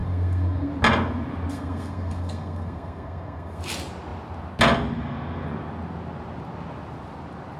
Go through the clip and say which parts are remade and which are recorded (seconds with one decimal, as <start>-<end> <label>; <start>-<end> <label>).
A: 0.0-0.7 remade; 0.7-1.5 recorded; 1.5-3.6 remade; 3.6-7.6 recorded